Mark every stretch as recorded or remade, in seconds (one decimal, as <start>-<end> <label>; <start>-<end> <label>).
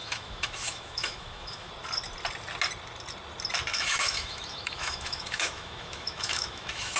0.0-1.7 remade; 1.7-3.7 recorded; 3.7-7.0 remade